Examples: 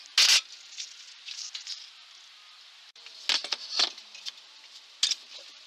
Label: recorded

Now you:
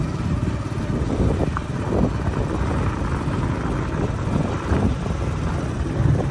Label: recorded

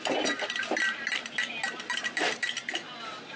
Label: recorded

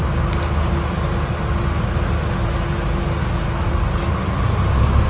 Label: recorded